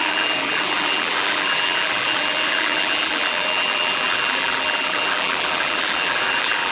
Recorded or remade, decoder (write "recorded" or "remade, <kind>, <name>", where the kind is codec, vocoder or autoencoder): remade, vocoder, BigVGAN v2